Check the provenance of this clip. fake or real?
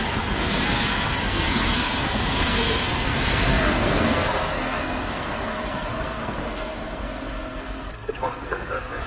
fake